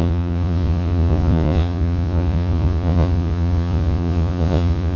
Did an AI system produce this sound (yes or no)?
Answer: yes